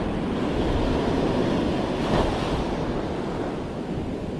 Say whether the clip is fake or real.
real